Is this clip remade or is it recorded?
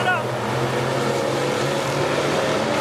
recorded